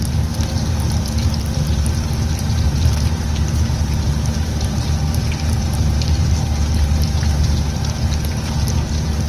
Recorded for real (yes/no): no